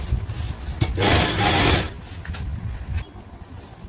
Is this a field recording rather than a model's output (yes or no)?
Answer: yes